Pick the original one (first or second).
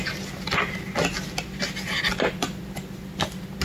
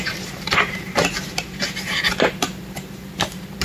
first